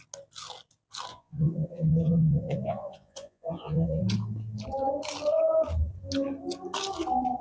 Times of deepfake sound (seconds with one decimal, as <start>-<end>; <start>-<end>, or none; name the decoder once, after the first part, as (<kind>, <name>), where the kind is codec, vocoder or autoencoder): 1.1-4.0 (vocoder, Vocos)